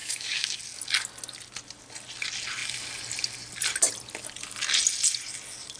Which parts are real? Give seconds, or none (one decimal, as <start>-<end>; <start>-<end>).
0.6-5.8